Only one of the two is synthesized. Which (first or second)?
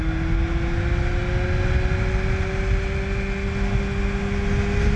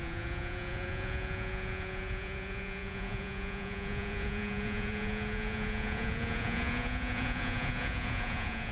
second